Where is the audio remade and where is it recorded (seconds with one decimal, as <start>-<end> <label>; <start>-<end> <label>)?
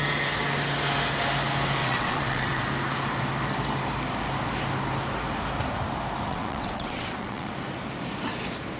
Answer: 0.0-1.8 recorded; 1.8-2.6 remade; 2.6-6.3 recorded; 6.3-7.5 remade; 7.5-8.8 recorded